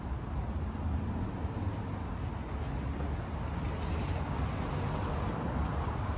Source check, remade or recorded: recorded